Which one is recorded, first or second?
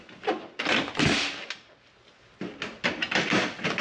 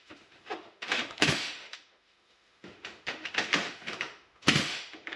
first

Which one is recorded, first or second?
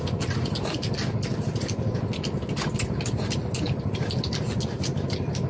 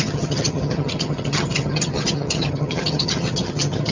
first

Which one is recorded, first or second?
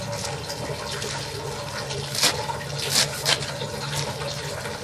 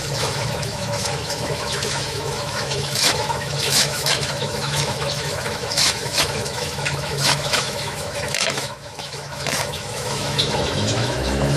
first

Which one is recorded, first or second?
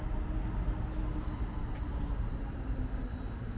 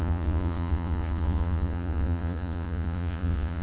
first